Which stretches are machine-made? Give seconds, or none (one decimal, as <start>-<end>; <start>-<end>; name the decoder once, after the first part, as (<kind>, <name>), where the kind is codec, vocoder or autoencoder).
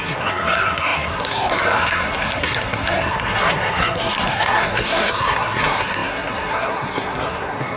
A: 0.0-7.8 (codec, SNAC)